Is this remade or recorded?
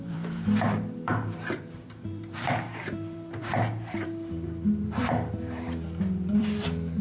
remade